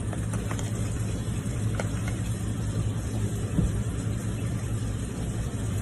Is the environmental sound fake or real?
fake